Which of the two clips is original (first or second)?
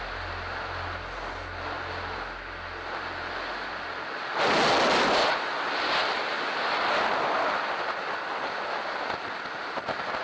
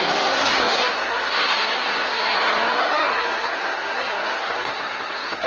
first